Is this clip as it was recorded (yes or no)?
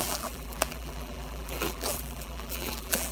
no